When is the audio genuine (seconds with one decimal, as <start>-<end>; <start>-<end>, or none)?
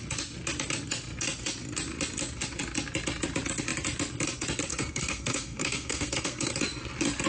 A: 0.0-4.7; 6.5-7.3